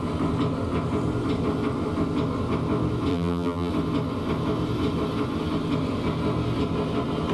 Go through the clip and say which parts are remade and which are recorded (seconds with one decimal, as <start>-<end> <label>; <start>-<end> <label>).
0.0-3.1 recorded; 3.1-3.7 remade; 3.7-7.3 recorded